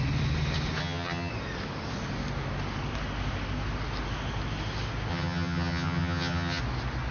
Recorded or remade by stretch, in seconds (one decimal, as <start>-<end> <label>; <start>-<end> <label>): 0.0-0.8 recorded; 0.8-1.3 remade; 1.3-5.1 recorded; 5.1-6.6 remade; 6.6-7.1 recorded